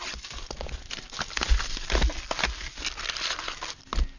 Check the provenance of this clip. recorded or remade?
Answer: recorded